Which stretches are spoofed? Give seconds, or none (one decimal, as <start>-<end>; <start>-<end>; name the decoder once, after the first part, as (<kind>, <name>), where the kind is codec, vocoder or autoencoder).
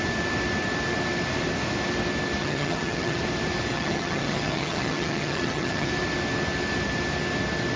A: 2.4-3.2 (vocoder, HiFi-GAN); 3.7-5.9